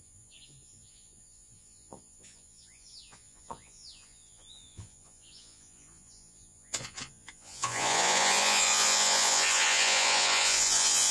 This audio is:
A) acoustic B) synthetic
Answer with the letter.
B